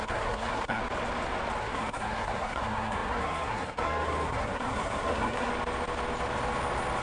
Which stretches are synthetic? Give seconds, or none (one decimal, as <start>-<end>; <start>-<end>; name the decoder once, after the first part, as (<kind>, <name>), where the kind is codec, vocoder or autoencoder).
0.0-0.8 (codec, SNAC); 1.6-5.5